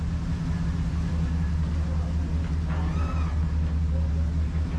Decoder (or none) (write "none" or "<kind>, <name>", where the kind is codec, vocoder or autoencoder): none